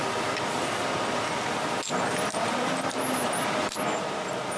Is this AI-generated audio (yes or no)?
no